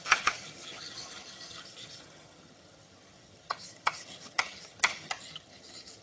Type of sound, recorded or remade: remade